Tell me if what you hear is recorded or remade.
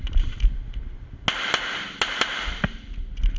recorded